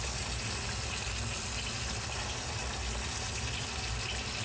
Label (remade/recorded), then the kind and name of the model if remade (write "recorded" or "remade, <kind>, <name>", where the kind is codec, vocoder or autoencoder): recorded